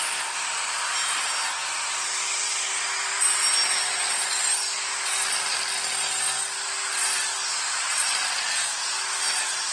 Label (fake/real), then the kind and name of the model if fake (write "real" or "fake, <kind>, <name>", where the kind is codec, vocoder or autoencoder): real